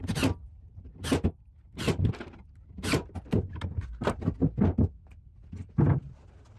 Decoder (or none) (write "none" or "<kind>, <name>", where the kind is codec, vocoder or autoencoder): none